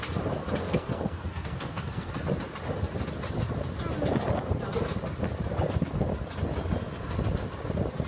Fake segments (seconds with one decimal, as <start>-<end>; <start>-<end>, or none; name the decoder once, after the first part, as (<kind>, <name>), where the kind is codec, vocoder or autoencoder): 0.6-2.1 (codec, SNAC)